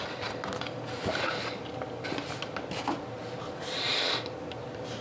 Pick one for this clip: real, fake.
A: real